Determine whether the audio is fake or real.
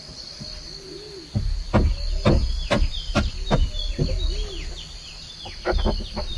real